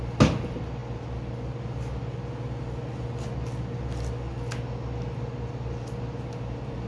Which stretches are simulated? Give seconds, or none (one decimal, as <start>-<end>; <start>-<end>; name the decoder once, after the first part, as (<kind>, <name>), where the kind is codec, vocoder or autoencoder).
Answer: none